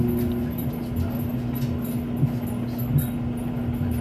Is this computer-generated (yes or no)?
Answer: no